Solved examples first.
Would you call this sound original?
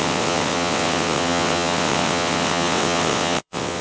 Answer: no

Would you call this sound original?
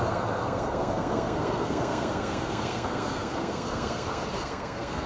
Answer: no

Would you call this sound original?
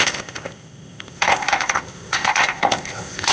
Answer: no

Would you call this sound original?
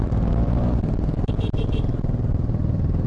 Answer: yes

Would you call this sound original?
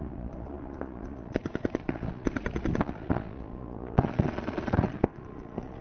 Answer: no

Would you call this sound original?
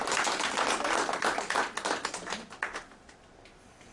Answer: yes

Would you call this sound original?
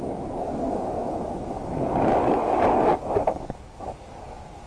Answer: no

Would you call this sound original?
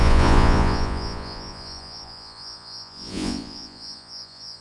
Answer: no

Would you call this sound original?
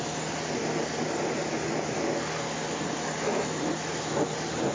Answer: yes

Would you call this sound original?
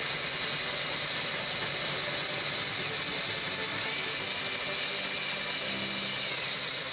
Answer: yes